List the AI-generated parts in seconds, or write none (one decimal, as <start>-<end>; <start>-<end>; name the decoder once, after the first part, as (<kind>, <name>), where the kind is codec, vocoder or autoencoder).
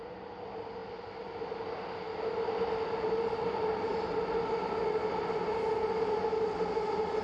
none